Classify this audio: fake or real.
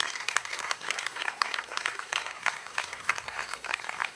fake